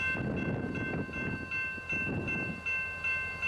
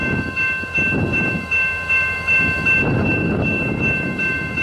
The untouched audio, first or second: first